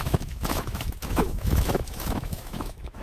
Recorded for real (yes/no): no